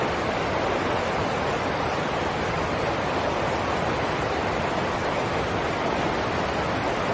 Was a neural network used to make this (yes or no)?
no